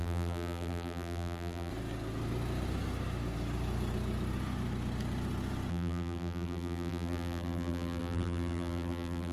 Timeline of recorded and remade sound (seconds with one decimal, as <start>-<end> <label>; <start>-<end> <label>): 0.0-1.7 remade; 1.7-5.7 recorded; 5.7-9.3 remade